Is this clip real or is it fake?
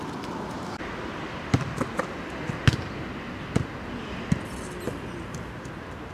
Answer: real